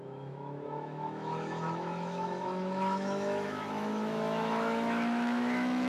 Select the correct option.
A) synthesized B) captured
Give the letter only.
A